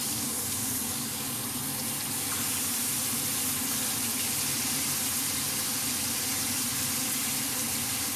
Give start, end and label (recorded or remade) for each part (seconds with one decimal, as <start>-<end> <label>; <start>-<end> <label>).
0.0-1.4 remade; 1.4-8.2 recorded